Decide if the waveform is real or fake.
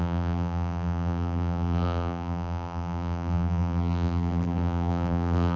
fake